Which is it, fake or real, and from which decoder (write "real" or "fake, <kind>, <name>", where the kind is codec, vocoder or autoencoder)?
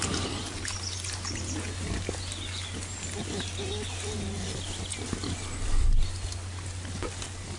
real